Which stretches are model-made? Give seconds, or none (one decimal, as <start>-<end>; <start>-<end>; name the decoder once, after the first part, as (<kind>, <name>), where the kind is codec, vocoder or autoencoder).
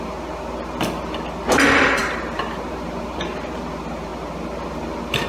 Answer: none